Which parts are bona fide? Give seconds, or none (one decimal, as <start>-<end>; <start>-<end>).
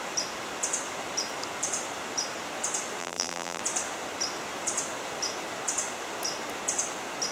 0.0-3.0; 3.6-7.3